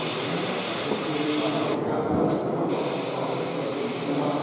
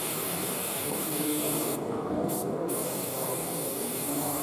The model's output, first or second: second